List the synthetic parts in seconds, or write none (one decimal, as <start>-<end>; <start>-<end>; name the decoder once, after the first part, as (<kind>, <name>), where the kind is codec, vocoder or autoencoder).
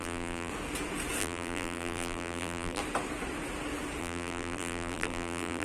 0.0-0.5 (vocoder, BigVGAN v2); 1.2-2.8; 4.0-5.6